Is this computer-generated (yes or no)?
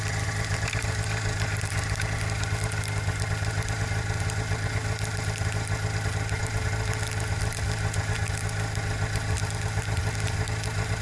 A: no